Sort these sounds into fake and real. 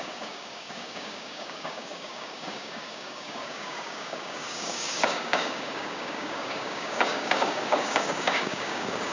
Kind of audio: fake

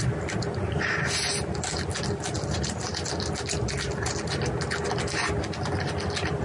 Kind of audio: real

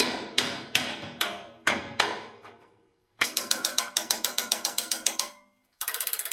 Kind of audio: fake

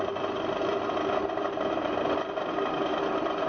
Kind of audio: real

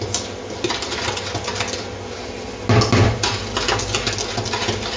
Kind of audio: real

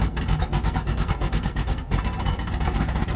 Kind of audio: fake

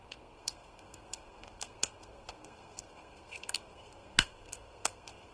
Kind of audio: fake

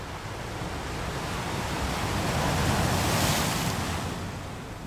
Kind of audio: real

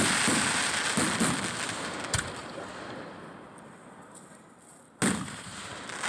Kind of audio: real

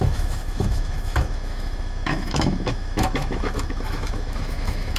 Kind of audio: fake